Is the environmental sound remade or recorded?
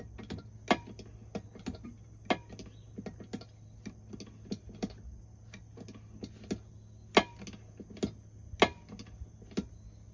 recorded